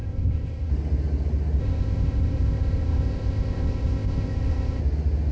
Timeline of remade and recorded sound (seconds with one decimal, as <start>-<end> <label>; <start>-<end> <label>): 0.0-0.7 remade; 0.7-1.6 recorded; 1.6-4.8 remade; 4.8-5.3 recorded